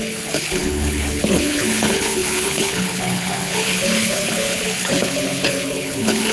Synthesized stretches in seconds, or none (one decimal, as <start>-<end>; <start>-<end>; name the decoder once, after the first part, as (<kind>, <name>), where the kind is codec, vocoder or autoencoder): 0.0-6.3 (codec, HILCodec)